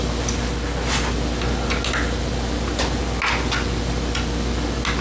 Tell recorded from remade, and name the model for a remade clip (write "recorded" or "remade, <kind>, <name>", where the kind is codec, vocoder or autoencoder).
recorded